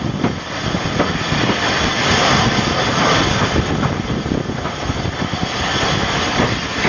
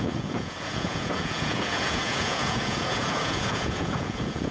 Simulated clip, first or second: second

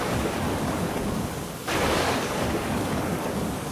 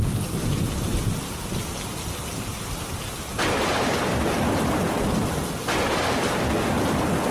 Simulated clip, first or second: first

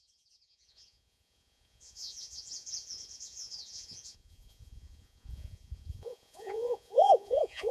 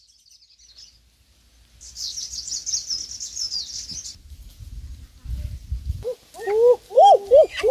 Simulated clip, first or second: first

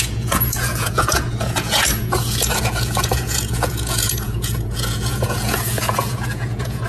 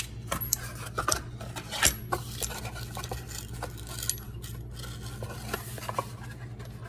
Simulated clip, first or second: first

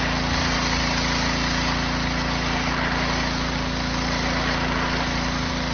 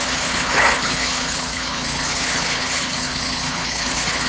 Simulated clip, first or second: second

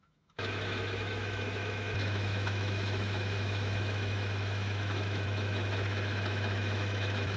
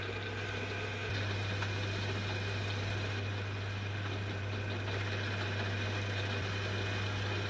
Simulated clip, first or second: first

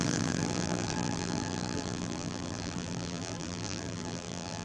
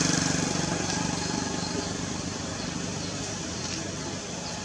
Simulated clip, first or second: first